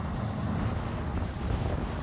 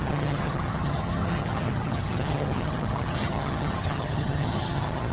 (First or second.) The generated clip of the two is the second